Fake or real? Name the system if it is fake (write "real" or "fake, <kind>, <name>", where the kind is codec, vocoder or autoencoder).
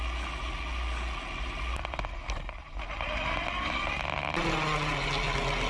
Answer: real